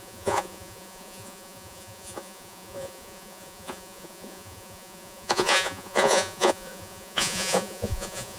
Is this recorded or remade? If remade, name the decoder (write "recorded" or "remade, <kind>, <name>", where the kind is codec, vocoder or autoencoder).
remade, vocoder, Vocos